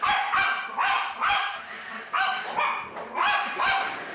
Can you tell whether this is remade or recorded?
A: recorded